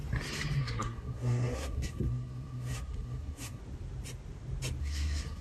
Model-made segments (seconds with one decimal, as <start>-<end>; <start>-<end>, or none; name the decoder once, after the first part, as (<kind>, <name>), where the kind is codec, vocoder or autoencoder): 0.6-3.6 (codec, SNAC); 4.8-5.4

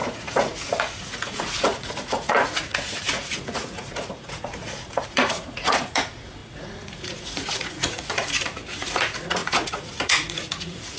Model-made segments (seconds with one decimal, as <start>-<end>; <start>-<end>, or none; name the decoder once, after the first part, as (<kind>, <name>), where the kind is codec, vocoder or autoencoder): 0.0-11.0 (vocoder, Vocos)

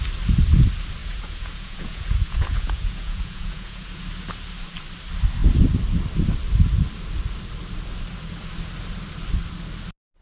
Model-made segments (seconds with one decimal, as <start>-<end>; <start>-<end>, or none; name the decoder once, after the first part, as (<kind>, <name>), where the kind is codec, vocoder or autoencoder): 1.0-4.0 (vocoder, Vocos)

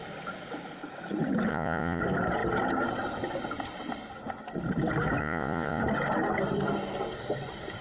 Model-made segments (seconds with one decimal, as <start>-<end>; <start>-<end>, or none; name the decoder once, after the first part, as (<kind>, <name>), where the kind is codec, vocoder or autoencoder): 1.5-2.0 (vocoder, Vocos); 5.2-5.8

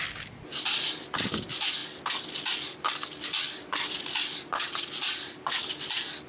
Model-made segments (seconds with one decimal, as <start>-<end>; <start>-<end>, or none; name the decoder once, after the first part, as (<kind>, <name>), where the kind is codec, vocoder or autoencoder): none